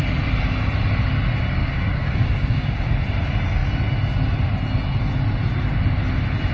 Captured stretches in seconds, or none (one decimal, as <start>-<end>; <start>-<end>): 0.0-1.6; 2.9-6.5